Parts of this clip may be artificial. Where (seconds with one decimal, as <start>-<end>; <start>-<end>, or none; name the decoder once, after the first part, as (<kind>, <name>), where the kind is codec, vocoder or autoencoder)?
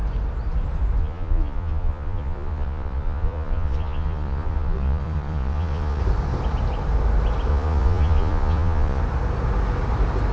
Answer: 1.0-6.0 (vocoder, Vocos); 7.5-9.0